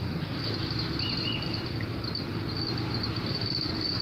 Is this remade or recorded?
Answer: recorded